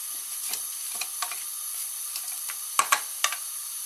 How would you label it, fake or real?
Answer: real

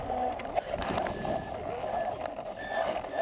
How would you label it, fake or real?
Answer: real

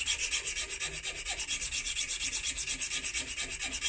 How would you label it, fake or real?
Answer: real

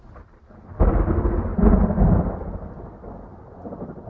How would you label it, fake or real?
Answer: real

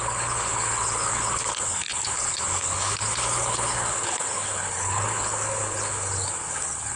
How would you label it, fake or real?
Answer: fake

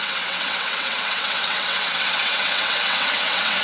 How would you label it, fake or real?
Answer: fake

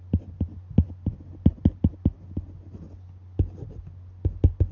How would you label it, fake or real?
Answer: real